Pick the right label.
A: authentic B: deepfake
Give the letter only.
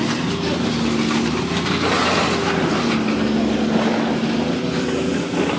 A